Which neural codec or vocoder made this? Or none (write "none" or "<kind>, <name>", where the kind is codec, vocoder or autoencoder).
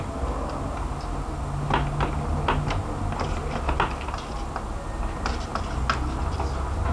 none